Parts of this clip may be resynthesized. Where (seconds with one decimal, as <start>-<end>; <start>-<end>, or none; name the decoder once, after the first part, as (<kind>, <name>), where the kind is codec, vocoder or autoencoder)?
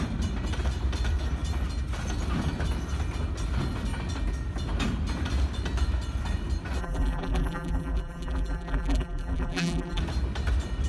6.8-10.0 (vocoder, BigVGAN v2)